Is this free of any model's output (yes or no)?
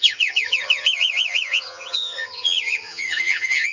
no